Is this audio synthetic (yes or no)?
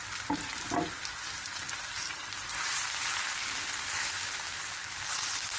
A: no